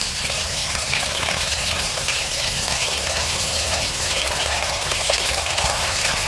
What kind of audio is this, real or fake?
fake